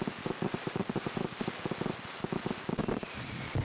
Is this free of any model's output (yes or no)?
yes